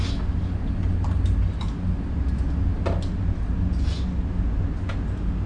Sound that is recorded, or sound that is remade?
recorded